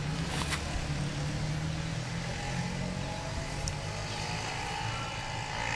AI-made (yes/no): no